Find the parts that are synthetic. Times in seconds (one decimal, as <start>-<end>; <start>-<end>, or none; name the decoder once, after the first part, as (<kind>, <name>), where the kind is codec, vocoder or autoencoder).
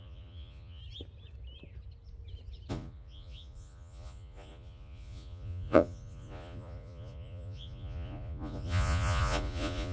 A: 0.0-0.8 (vocoder, Vocos); 2.7-9.9